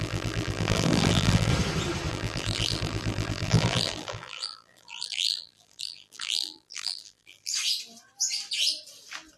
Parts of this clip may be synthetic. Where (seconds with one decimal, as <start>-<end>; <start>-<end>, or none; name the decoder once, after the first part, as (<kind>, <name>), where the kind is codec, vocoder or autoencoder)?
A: 0.0-1.5 (vocoder, BigVGAN v2); 2.1-7.5